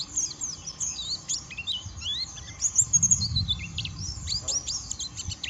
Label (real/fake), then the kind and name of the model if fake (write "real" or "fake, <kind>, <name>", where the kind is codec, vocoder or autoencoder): real